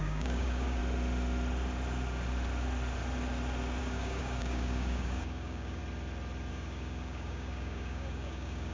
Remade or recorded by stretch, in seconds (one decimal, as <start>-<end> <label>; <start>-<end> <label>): 0.0-0.8 remade; 0.8-3.8 recorded; 3.8-5.8 remade; 5.8-6.5 recorded; 6.5-8.7 remade